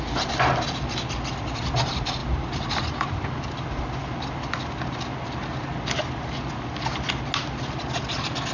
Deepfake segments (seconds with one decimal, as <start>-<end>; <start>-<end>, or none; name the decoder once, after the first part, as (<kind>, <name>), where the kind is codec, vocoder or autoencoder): none